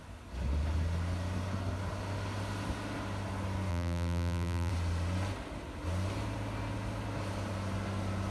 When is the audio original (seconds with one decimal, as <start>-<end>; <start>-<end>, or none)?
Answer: 0.0-3.7; 4.7-8.3